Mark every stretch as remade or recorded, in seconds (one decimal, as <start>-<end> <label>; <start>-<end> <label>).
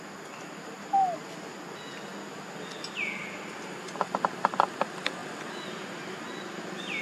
0.0-7.0 recorded